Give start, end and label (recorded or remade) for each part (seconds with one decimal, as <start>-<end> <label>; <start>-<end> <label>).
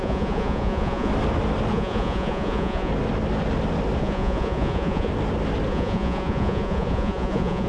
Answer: 0.0-1.1 remade; 1.1-1.7 recorded; 1.7-2.9 remade; 2.9-4.0 recorded; 4.0-5.1 remade; 5.1-5.7 recorded; 5.7-7.7 remade